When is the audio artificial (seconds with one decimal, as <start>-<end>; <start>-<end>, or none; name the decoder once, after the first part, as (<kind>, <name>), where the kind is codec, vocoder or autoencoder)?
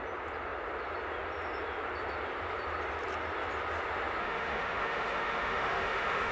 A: 4.2-6.3 (autoencoder, DAC-VAE)